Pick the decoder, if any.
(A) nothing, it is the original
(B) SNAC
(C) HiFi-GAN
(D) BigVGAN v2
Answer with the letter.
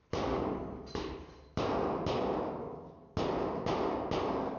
A